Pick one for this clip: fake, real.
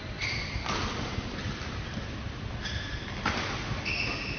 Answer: real